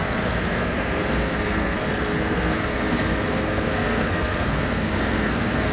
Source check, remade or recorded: remade